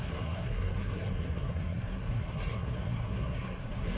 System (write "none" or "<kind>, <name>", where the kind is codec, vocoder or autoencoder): codec, SNAC